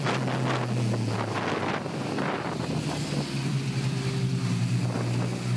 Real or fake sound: real